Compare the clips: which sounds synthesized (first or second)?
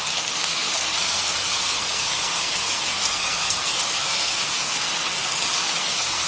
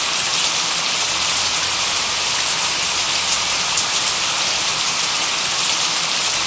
first